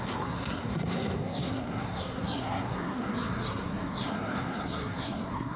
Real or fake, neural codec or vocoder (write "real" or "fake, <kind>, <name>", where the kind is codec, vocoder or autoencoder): fake, codec, SNAC